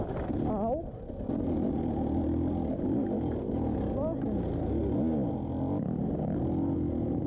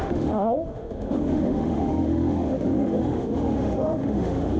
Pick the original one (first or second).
first